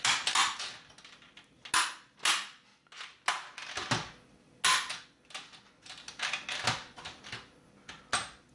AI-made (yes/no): no